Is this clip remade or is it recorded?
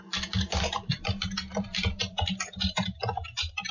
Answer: remade